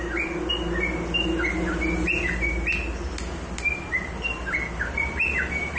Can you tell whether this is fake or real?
real